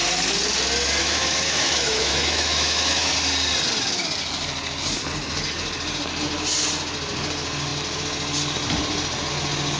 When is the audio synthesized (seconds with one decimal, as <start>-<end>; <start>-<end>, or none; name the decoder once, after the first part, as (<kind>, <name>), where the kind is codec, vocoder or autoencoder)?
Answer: 1.0-3.1 (autoencoder, DAC-VAE)